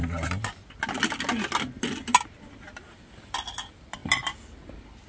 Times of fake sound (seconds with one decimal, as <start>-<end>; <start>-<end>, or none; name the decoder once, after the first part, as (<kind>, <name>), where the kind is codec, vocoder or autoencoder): none

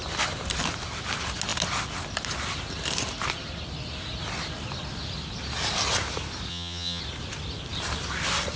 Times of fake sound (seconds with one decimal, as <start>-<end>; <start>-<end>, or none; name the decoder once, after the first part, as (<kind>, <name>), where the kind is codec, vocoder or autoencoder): 6.5-7.0 (vocoder, HiFi-GAN)

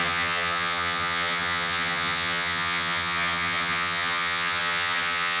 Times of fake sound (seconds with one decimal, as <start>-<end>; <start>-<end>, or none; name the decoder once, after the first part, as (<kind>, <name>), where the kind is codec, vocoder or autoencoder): 0.0-5.4 (vocoder, HiFi-GAN)

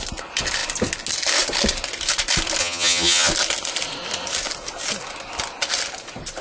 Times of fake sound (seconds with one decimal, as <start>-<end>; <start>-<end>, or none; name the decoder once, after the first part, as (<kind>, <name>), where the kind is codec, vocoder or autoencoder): 2.6-3.3 (vocoder, HiFi-GAN)

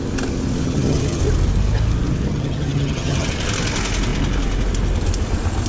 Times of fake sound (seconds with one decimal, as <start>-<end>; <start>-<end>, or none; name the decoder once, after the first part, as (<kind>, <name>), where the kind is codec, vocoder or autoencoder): 0.6-1.2 (vocoder, HiFi-GAN); 2.3-3.3